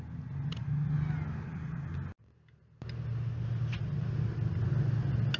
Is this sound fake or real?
real